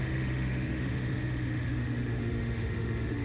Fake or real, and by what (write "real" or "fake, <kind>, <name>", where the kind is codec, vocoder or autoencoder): fake, autoencoder, DAC-VAE